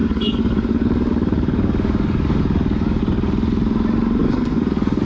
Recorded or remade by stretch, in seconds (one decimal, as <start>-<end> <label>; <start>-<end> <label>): 0.0-3.0 remade; 3.0-4.2 recorded; 4.2-5.0 remade